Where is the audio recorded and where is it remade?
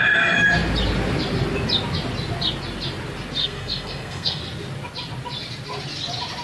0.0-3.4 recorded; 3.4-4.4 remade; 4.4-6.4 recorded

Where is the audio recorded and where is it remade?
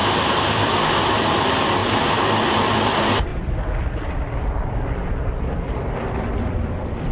0.0-1.8 remade; 1.8-2.4 recorded; 2.4-3.3 remade; 3.3-5.3 recorded; 5.3-7.1 remade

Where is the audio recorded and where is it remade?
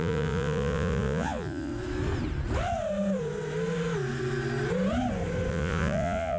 0.0-1.7 remade; 1.7-5.5 recorded; 5.5-6.4 remade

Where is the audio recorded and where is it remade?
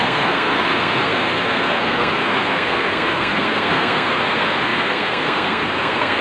0.0-6.2 remade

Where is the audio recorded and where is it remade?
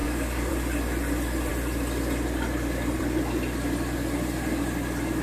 0.0-0.5 remade; 0.5-5.2 recorded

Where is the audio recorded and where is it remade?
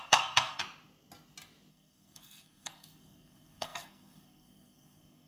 0.0-0.6 remade; 0.6-1.7 recorded; 1.7-5.3 remade